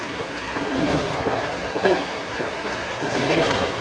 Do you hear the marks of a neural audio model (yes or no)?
yes